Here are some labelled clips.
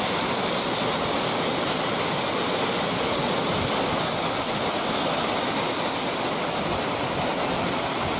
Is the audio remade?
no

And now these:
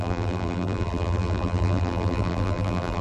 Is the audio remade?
yes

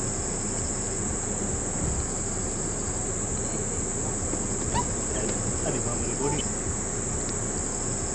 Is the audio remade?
no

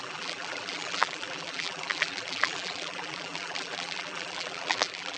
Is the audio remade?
yes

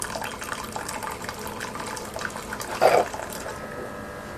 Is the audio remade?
no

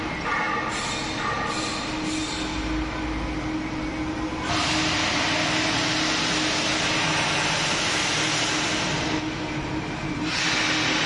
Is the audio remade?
no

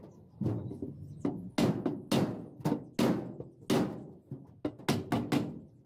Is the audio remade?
no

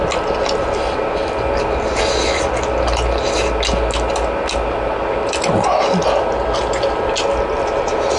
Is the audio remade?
no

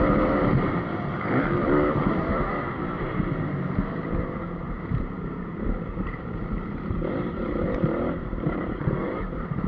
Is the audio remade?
yes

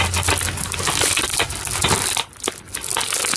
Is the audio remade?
no